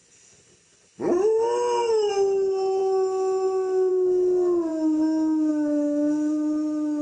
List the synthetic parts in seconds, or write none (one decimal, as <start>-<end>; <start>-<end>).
none